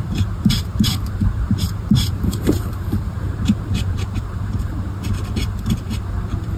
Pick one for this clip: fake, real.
fake